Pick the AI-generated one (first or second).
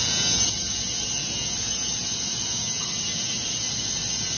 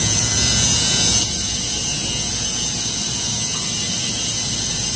first